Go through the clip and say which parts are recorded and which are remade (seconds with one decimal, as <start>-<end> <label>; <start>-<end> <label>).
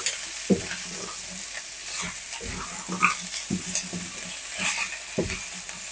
0.0-5.9 recorded